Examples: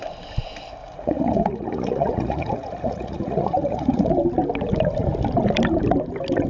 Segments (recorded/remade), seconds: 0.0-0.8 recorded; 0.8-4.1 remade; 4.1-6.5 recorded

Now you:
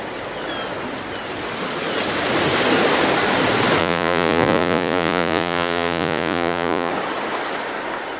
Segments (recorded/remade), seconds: 0.0-3.8 recorded; 3.8-6.9 remade; 6.9-8.2 recorded

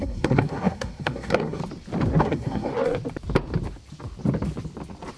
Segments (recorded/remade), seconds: 0.0-1.6 remade; 1.6-2.2 recorded; 2.2-2.7 remade; 2.7-5.2 recorded

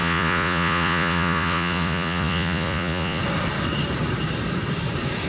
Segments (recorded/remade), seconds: 0.0-3.2 remade; 3.2-5.3 recorded

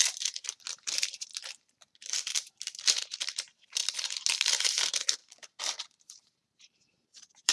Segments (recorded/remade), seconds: 0.0-1.3 remade; 1.3-1.9 recorded; 1.9-3.8 remade; 3.8-4.3 recorded; 4.3-7.5 remade